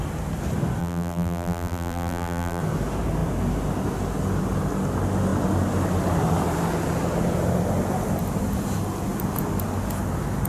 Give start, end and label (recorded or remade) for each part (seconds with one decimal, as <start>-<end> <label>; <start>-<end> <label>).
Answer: 0.0-0.8 recorded; 0.8-2.6 remade; 2.6-10.5 recorded